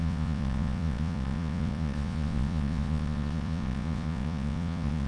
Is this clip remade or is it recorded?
remade